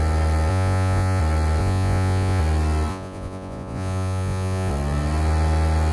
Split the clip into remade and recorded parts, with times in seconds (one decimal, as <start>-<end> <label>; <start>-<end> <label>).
0.0-0.5 recorded; 0.5-1.2 remade; 1.2-1.6 recorded; 1.6-2.4 remade; 2.4-2.9 recorded; 2.9-4.7 remade; 4.7-5.9 recorded